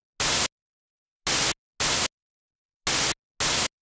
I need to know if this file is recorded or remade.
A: recorded